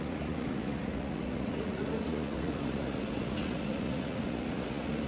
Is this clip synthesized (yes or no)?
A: yes